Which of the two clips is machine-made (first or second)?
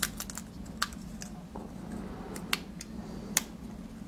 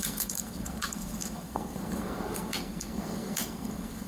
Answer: second